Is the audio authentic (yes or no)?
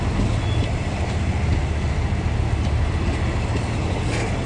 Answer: yes